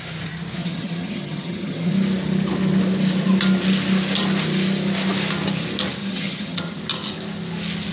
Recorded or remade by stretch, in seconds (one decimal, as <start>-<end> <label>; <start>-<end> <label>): 0.0-0.6 recorded; 0.6-1.9 remade; 1.9-6.0 recorded; 6.0-6.8 remade; 6.8-7.9 recorded